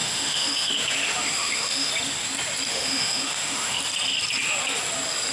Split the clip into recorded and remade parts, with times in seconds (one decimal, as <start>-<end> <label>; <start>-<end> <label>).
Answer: 0.0-0.7 remade; 0.7-1.2 recorded; 1.2-1.9 remade; 1.9-2.7 recorded; 2.7-3.8 remade; 3.8-5.3 recorded